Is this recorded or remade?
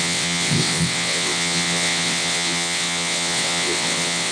remade